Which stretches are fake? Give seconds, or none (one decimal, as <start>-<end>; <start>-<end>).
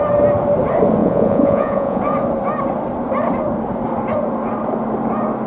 1.0-2.0